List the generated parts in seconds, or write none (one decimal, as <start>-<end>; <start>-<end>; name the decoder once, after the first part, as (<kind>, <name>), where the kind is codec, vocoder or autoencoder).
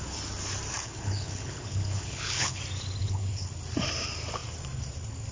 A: 0.8-2.6 (codec, HILCodec); 3.0-3.5